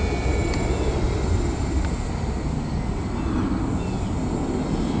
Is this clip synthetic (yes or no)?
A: no